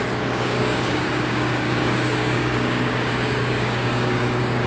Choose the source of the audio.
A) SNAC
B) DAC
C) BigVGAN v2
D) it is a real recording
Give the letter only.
B